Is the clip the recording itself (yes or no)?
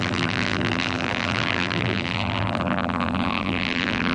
no